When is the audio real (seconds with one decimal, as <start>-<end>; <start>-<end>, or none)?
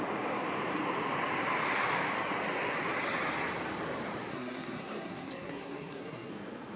0.0-4.3; 6.3-6.8